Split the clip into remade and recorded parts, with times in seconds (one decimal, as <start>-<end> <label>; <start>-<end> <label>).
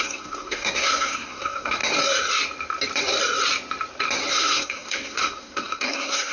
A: 0.0-1.8 remade; 1.8-4.3 recorded; 4.3-6.3 remade